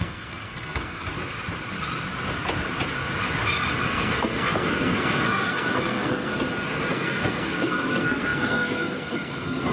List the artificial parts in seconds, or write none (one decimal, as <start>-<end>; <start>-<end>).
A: 0.0-1.1; 3.8-6.3; 6.9-9.7